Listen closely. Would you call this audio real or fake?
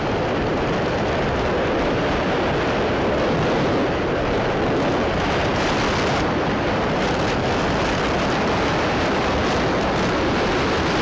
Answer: fake